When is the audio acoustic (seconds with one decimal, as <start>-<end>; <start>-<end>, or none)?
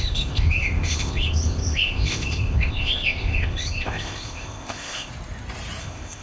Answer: 5.1-5.8